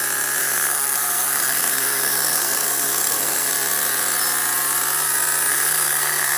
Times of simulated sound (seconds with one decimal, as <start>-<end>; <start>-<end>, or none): 0.4-3.5; 5.5-6.4